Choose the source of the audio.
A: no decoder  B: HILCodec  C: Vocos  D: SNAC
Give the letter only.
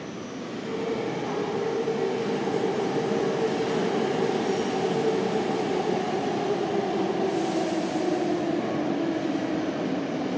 A